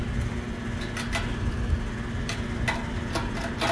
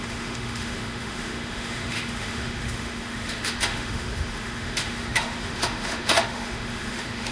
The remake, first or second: second